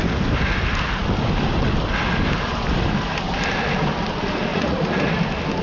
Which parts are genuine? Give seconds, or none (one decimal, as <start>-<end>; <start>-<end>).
0.0-4.5; 5.1-5.6